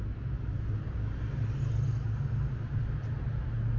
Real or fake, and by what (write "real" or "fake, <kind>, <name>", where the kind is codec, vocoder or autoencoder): real